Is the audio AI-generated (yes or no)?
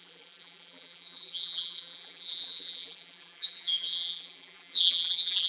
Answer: yes